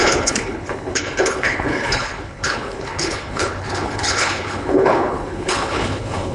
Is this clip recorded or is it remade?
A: remade